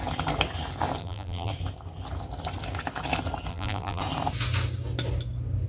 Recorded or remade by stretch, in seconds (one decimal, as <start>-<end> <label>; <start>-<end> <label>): 0.0-1.0 recorded; 1.0-1.5 remade; 1.5-3.5 recorded; 3.5-4.0 remade; 4.0-5.7 recorded

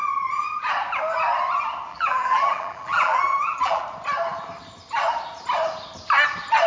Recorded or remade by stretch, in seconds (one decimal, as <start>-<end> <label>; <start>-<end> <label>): 0.0-1.9 recorded; 1.9-3.8 remade; 3.8-6.7 recorded